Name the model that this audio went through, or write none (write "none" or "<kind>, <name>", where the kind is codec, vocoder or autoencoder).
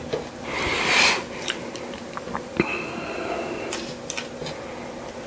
none